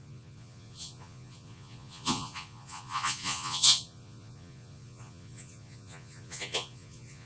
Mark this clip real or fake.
fake